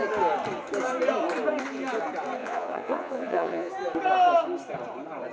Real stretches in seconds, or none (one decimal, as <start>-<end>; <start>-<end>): 0.0-2.4; 3.7-5.3